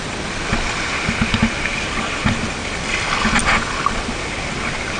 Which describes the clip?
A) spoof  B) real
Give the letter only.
B